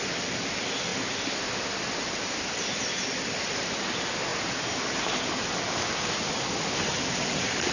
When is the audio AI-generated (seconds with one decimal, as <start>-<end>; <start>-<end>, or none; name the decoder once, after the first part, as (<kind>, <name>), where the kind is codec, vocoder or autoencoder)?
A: 0.9-2.9 (vocoder, BigVGAN v2); 4.3-5.1